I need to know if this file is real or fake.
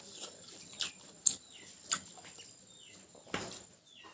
real